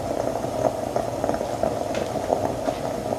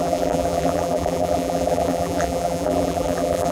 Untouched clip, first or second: first